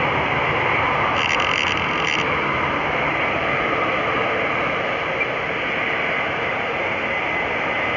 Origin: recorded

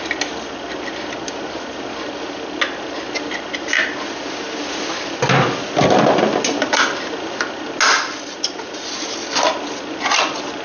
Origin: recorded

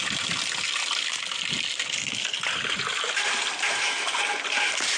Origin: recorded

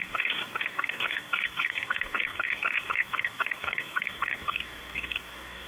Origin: remade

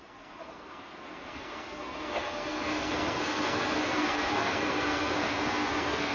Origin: remade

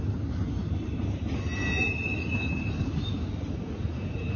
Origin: recorded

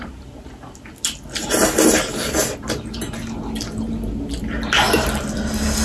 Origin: recorded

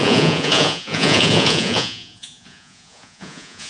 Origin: remade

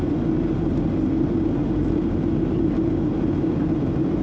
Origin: recorded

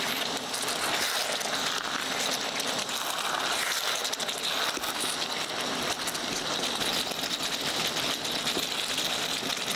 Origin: recorded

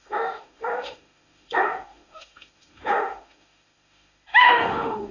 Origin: remade